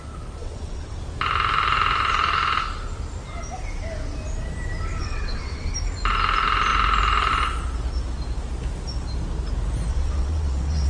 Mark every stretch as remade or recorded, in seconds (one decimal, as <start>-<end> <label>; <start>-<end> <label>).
0.0-0.4 recorded; 0.4-1.0 remade; 1.0-5.0 recorded; 5.0-5.7 remade; 5.7-9.9 recorded; 9.9-10.9 remade